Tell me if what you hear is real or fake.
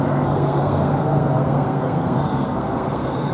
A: fake